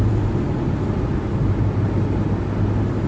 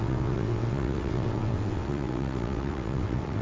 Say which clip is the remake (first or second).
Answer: second